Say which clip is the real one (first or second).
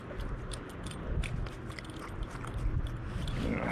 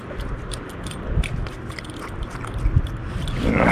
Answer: first